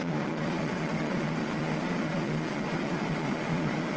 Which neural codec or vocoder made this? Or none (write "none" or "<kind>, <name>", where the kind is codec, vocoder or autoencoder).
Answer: vocoder, Vocos